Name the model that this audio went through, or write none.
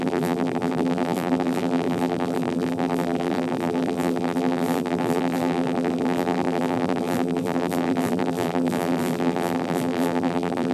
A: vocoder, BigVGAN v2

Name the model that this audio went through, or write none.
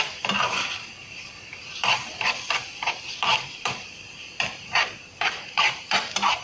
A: vocoder, BigVGAN v2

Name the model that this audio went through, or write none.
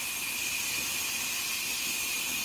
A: none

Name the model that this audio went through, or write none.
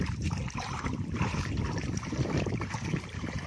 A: vocoder, BigVGAN v2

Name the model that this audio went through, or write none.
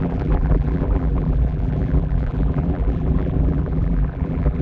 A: vocoder, BigVGAN v2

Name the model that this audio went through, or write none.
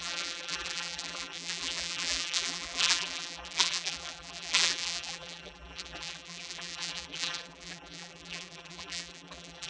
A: vocoder, BigVGAN v2